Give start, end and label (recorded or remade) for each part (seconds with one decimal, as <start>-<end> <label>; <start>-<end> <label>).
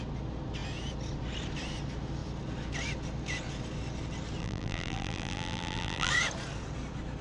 0.0-4.4 recorded; 4.4-6.1 remade; 6.1-7.2 recorded